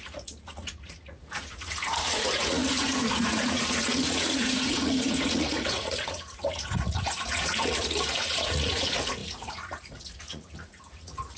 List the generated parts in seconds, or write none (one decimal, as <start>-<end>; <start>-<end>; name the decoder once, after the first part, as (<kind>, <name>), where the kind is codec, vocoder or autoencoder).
0.0-11.4 (vocoder, Vocos)